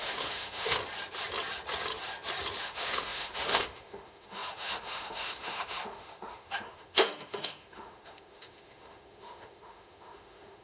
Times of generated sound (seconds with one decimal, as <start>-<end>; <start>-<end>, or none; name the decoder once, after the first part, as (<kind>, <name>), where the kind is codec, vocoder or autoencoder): 0.0-0.8 (autoencoder, DAC-VAE); 2.6-10.6